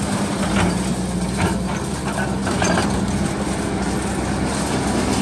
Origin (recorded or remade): recorded